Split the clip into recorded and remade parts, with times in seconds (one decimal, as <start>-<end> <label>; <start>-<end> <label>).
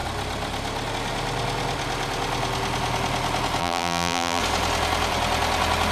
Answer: 0.0-3.6 recorded; 3.6-4.4 remade; 4.4-5.9 recorded